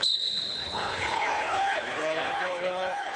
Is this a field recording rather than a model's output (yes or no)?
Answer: no